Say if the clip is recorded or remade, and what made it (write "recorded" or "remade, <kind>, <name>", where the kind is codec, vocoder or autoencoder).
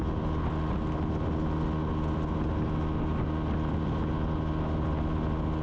recorded